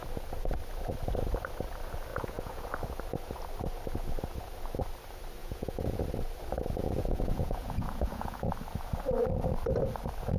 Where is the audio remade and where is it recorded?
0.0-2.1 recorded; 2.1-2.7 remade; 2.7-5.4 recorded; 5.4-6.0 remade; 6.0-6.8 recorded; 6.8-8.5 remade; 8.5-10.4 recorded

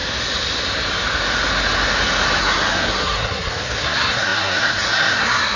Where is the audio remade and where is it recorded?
0.0-2.4 recorded; 2.4-5.6 remade

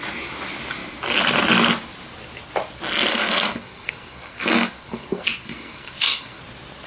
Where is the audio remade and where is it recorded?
0.0-3.1 recorded; 3.1-6.4 remade; 6.4-6.9 recorded

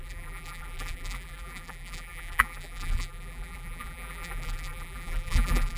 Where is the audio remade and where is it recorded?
0.0-5.8 remade

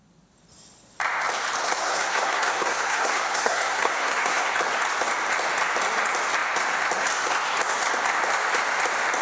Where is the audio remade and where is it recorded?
0.0-1.8 recorded; 1.8-4.5 remade; 4.5-9.2 recorded

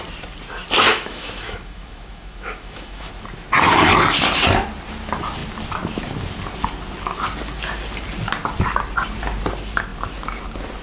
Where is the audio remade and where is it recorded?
0.0-0.9 recorded; 0.9-3.1 remade; 3.1-10.8 recorded

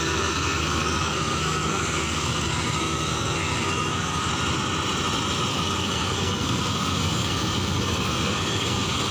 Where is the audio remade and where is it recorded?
0.0-4.3 remade; 4.3-5.5 recorded; 5.5-9.1 remade

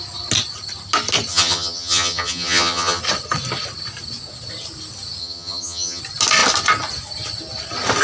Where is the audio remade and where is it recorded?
0.0-1.3 recorded; 1.3-3.0 remade; 3.0-5.2 recorded; 5.2-6.0 remade; 6.0-8.0 recorded